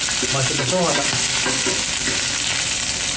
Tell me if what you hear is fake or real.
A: real